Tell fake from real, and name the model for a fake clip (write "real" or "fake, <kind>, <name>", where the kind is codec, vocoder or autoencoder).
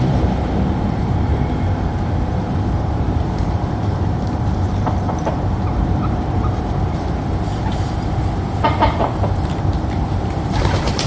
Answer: fake, vocoder, BigVGAN v2